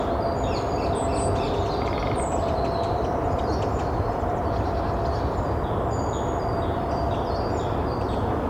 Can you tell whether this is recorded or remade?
recorded